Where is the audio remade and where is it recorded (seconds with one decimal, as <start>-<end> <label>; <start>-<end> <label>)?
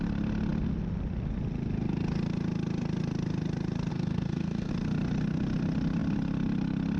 0.0-3.9 recorded; 3.9-4.7 remade; 4.7-7.0 recorded